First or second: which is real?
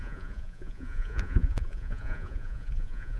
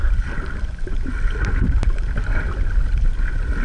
second